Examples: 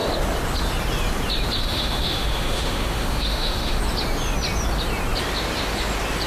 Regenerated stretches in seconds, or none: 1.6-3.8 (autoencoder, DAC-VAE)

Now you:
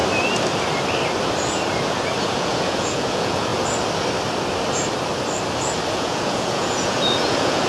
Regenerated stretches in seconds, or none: 2.2-3.5 (vocoder, Vocos); 5.9-7.7

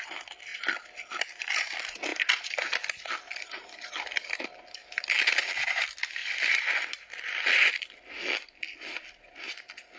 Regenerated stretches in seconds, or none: 6.2-9.3 (vocoder, BigVGAN v2)

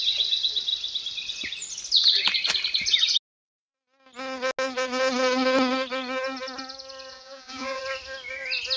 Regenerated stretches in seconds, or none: 7.1-7.8 (vocoder, Vocos)

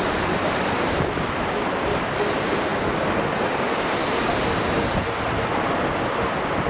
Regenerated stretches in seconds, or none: none

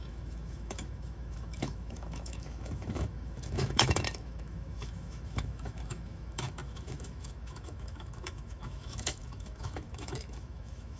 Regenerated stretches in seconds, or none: 0.0-11.0 (autoencoder, DAC-VAE)